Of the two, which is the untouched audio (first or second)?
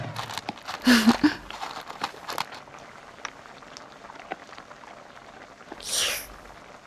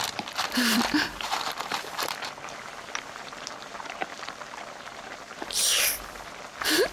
first